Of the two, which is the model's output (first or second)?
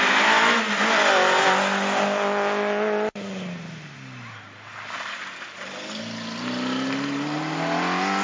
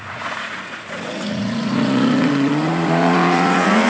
second